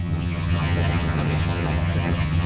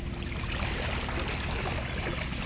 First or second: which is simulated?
first